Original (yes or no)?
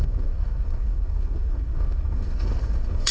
no